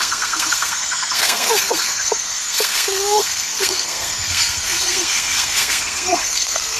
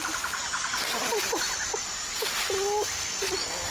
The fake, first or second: first